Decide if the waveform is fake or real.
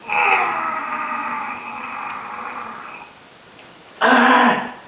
real